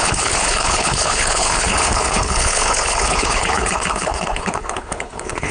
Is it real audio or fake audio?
fake